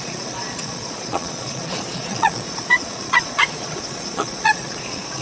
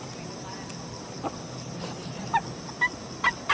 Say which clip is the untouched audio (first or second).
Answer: second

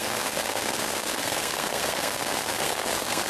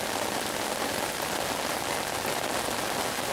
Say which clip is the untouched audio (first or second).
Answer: second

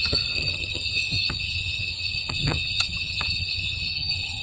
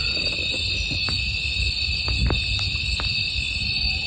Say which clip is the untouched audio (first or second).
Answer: second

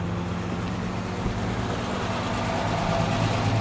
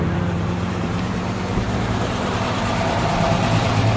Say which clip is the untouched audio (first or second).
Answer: first